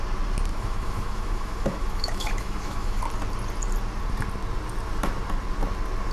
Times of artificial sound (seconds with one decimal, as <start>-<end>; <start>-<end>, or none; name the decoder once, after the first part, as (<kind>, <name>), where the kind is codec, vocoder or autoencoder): 0.5-3.0 (autoencoder, DAC-VAE)